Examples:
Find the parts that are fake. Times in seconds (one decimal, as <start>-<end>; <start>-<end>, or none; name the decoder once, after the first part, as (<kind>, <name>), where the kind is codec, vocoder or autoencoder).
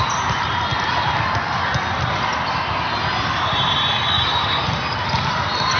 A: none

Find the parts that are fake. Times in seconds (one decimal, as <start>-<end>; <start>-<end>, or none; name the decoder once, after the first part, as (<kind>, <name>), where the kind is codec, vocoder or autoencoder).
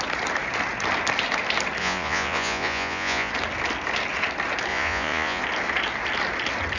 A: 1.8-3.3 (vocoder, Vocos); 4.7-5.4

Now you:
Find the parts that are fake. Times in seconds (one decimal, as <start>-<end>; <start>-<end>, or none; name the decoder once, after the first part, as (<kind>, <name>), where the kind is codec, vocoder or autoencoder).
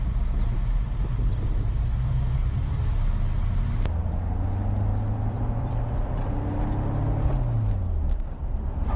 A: 4.9-5.9 (vocoder, BigVGAN v2)